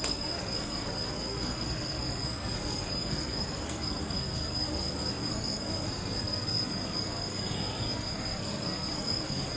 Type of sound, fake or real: fake